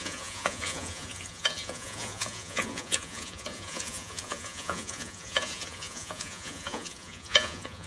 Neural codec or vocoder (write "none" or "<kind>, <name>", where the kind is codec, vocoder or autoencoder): vocoder, Vocos